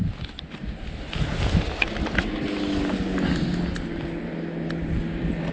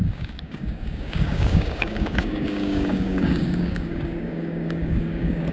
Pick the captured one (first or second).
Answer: first